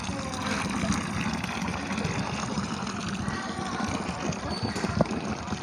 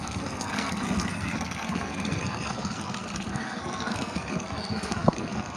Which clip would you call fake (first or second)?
second